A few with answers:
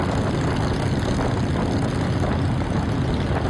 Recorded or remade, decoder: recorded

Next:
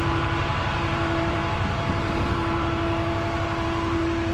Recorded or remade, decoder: remade, vocoder, BigVGAN v2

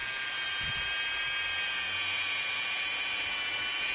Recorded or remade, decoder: recorded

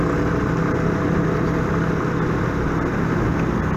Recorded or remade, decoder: recorded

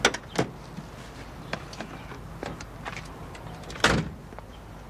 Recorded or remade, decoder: recorded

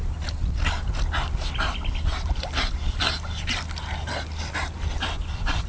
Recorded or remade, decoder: recorded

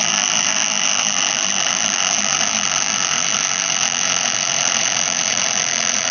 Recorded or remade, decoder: remade, vocoder, BigVGAN v2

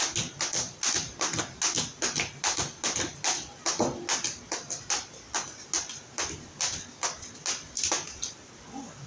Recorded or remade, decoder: recorded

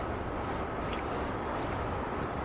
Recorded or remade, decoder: remade, vocoder, BigVGAN v2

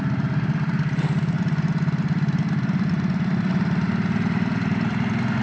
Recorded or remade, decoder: remade, vocoder, BigVGAN v2